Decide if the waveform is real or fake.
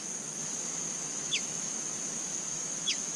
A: fake